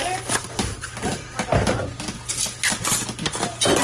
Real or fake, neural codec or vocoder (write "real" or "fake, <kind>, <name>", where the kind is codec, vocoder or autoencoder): real